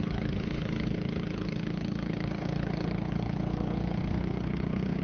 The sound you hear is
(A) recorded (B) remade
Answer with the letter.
B